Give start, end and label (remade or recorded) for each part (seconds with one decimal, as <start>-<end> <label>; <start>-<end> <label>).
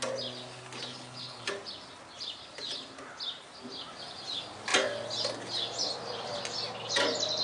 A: 0.0-0.9 recorded; 0.9-1.5 remade; 1.5-7.4 recorded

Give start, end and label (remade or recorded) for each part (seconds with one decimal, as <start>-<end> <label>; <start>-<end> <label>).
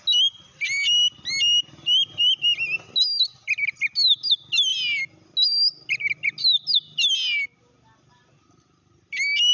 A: 0.0-9.5 recorded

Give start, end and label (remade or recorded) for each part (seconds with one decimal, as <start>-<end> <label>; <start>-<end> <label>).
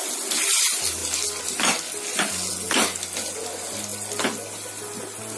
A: 0.0-5.4 recorded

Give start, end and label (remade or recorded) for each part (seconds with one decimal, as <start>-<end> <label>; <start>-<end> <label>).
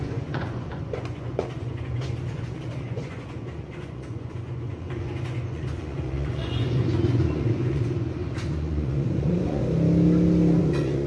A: 0.0-9.6 remade; 9.6-10.6 recorded; 10.6-11.1 remade